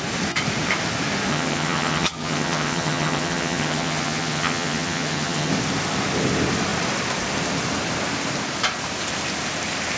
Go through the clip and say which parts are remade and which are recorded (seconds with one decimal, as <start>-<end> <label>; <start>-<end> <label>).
0.0-1.3 recorded; 1.3-5.5 remade; 5.5-10.0 recorded